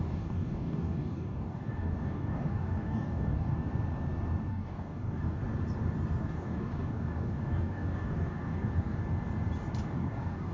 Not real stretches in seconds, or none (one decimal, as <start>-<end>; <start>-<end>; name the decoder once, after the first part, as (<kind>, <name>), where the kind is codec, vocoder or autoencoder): 0.0-3.7 (codec, DAC); 4.5-5.4; 6.2-9.0; 9.8-10.5